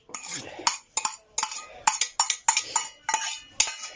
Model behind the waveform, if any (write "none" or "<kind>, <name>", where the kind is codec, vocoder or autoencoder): none